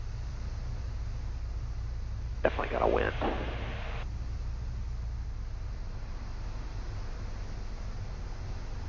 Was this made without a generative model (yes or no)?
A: yes